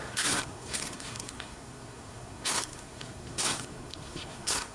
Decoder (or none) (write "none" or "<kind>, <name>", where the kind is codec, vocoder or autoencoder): codec, SNAC